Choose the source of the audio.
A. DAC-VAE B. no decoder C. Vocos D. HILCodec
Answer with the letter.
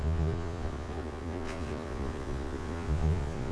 C